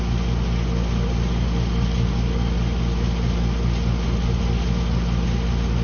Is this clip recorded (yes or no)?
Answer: yes